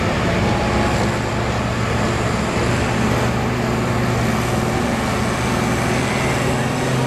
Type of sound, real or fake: real